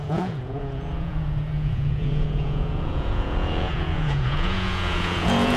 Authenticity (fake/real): fake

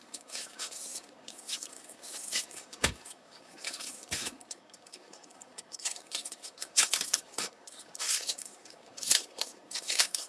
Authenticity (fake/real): fake